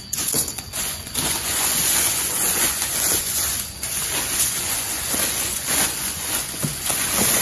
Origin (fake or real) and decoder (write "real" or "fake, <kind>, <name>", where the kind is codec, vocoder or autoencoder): fake, vocoder, Vocos